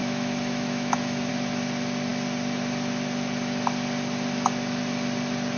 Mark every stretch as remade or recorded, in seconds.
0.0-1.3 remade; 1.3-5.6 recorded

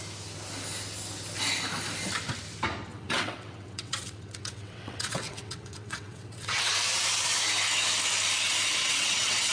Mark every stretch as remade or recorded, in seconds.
0.0-2.9 recorded; 2.9-6.7 remade; 6.7-8.8 recorded; 8.8-9.5 remade

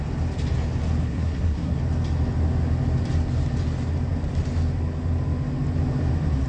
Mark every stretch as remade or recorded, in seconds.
0.0-1.0 recorded; 1.0-1.8 remade; 1.8-6.5 recorded

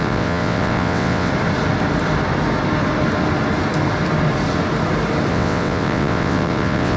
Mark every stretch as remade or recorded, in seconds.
0.0-1.3 remade; 1.3-5.3 recorded; 5.3-7.0 remade

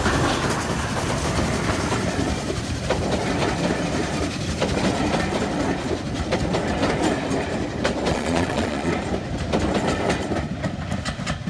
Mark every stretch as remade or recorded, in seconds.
0.0-8.1 recorded; 8.1-8.9 remade; 8.9-11.5 recorded

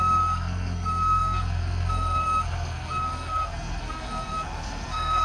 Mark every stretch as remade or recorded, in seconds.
0.0-5.2 remade

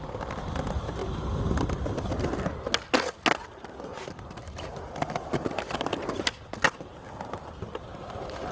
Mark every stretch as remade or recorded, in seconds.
0.0-8.5 recorded